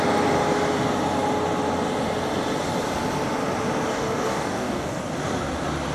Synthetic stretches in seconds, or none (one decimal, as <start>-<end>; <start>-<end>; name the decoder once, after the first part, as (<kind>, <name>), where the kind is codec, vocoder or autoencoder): 3.9-5.0 (codec, DAC)